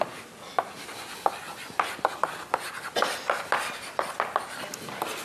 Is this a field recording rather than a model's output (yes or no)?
yes